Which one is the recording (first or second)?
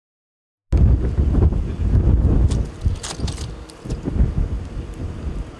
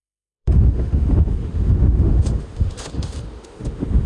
first